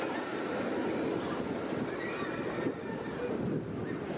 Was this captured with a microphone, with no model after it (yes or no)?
yes